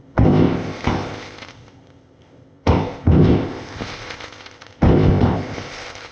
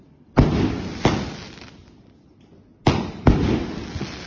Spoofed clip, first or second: first